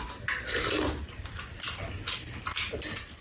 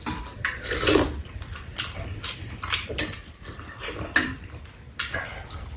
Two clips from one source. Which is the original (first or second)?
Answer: first